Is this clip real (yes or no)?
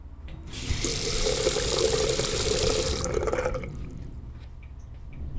no